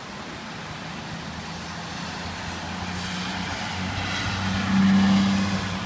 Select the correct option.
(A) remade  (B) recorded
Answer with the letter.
B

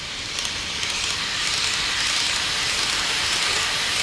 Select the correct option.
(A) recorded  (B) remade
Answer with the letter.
A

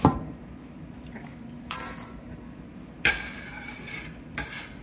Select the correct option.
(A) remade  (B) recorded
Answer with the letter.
A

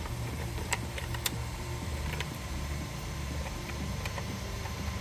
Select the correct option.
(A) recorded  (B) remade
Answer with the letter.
B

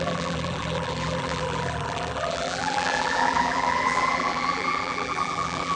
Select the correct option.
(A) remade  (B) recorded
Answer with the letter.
A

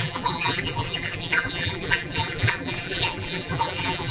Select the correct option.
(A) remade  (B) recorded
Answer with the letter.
A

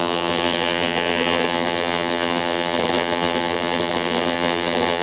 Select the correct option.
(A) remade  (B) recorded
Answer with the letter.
A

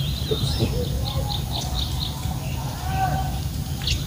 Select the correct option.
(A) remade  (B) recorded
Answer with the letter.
B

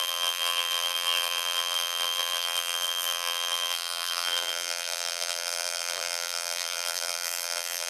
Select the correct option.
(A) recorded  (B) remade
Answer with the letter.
B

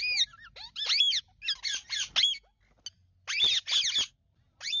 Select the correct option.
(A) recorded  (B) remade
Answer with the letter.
A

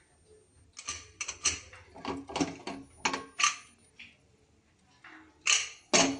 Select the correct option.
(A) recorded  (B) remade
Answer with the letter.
A